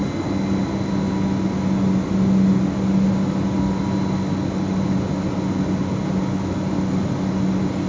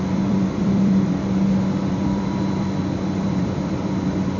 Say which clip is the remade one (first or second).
second